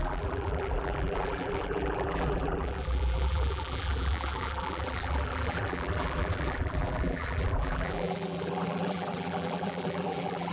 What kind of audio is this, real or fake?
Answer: fake